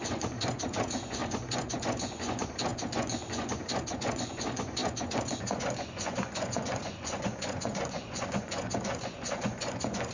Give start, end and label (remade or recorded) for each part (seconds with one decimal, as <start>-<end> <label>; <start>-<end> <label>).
0.0-10.1 remade